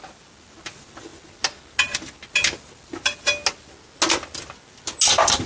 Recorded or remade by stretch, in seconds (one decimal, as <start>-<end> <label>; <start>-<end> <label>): 0.0-5.5 recorded